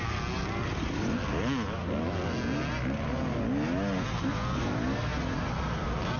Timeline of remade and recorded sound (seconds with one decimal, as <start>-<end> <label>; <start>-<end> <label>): 0.0-6.2 recorded